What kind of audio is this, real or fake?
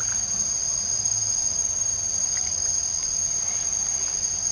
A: real